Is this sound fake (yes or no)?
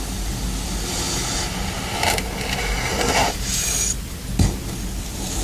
no